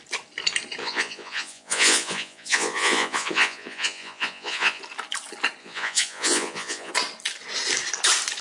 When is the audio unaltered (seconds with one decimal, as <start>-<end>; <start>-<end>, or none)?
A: 0.0-0.8; 4.8-5.6; 6.9-8.4